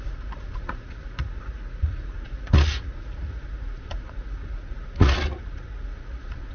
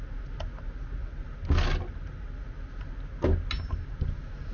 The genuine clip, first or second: second